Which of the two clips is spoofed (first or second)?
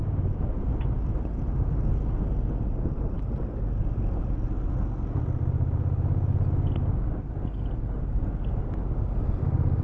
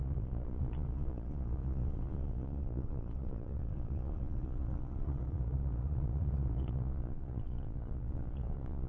second